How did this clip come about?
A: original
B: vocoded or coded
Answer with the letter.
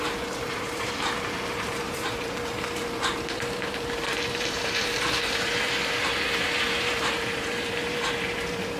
B